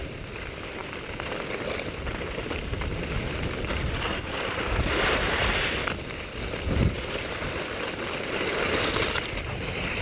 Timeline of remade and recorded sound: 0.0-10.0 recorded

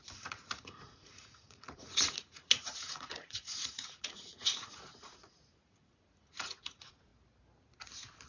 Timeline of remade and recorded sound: 0.0-7.1 remade; 7.1-8.3 recorded

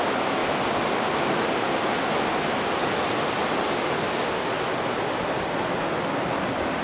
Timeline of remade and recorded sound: 0.0-6.8 recorded

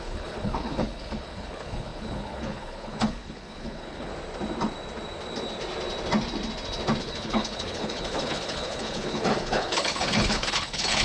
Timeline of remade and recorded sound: 0.0-4.1 remade; 4.1-7.0 recorded; 7.0-11.0 remade

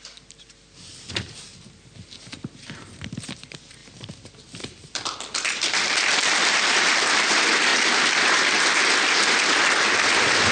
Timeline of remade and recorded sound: 0.0-3.8 recorded; 3.8-7.0 remade; 7.0-7.7 recorded; 7.7-9.5 remade; 9.5-10.5 recorded

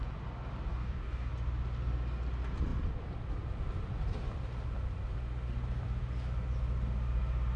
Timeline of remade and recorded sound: 0.0-0.7 recorded; 0.7-1.3 remade; 1.3-7.6 recorded